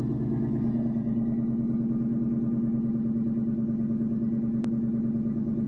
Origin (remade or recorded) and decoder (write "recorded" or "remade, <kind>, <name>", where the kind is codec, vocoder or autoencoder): recorded